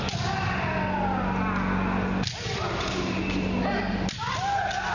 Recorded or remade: recorded